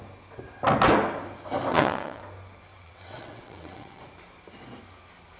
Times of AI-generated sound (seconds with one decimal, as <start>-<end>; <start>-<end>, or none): 1.7-2.2; 2.7-4.0